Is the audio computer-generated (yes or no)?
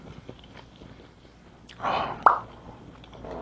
no